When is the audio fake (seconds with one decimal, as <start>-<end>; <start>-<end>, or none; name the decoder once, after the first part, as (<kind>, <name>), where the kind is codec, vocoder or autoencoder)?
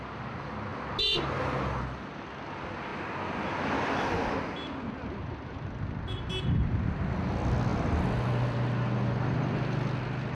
none